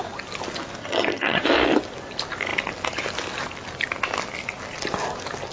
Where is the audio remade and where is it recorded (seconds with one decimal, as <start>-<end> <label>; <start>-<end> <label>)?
0.0-0.8 recorded; 0.8-1.4 remade; 1.4-5.5 recorded